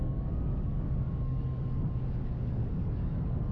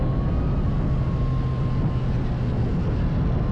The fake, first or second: first